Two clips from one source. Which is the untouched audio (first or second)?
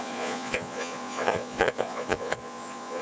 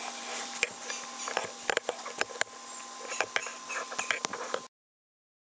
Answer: second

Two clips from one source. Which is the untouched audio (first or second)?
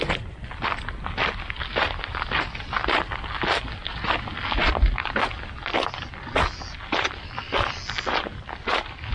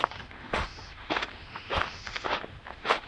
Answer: first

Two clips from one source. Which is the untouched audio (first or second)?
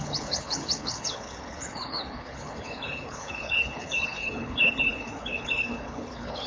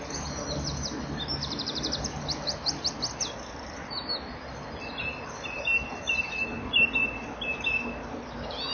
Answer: second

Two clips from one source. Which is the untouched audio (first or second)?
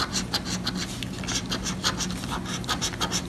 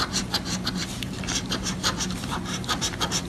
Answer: first